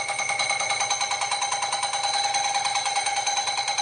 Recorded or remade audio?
recorded